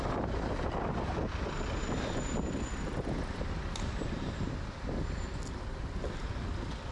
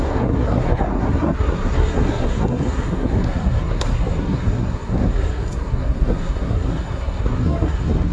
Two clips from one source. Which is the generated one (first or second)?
second